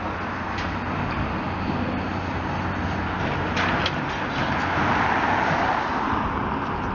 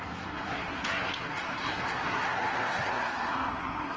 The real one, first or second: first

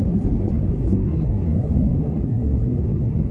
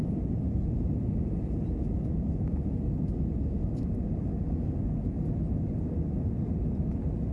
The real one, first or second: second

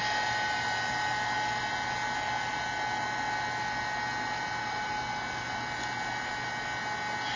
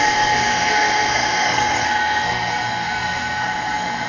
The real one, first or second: first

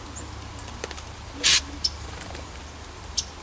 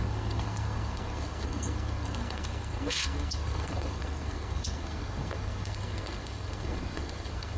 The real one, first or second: first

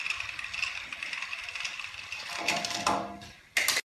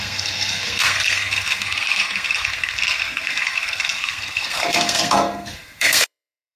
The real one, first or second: first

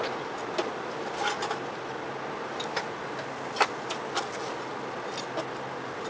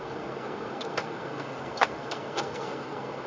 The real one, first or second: first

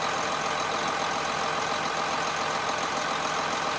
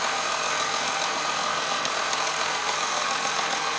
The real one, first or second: first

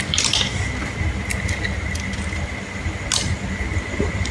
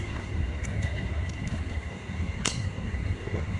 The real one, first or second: first